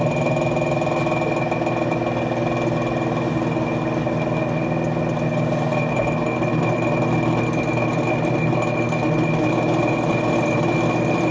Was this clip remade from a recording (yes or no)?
no